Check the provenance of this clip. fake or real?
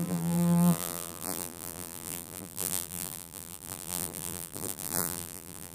fake